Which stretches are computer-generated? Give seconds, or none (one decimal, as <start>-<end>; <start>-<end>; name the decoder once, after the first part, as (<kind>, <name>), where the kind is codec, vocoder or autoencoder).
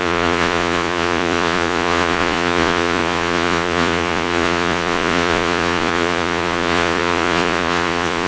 0.0-8.3 (vocoder, Vocos)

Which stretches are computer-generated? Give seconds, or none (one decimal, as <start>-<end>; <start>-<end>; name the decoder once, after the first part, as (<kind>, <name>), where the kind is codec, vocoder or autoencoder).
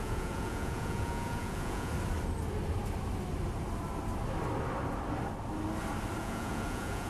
0.0-1.9 (vocoder, Vocos); 6.2-7.1